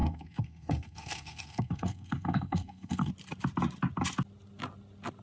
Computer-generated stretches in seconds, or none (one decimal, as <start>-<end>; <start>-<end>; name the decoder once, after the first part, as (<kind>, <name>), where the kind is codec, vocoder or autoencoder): 0.0-3.1 (codec, SNAC)